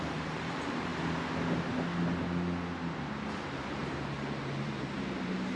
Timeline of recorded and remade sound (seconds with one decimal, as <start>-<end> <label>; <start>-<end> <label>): 0.0-0.9 remade; 0.9-3.4 recorded; 3.4-5.6 remade